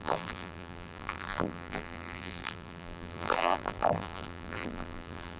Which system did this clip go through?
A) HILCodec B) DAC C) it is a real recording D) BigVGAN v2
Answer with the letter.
D